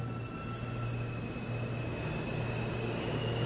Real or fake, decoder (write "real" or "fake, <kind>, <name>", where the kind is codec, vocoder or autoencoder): real